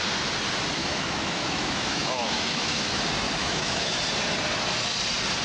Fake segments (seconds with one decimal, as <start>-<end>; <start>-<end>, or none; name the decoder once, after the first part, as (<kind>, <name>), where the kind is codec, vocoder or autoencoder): 0.8-3.0 (autoencoder, DAC-VAE); 3.4-4.0